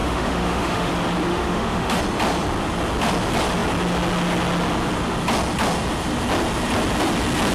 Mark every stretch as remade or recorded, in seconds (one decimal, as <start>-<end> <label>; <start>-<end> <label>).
0.0-0.9 remade; 0.9-1.3 recorded; 1.3-2.0 remade; 2.0-7.5 recorded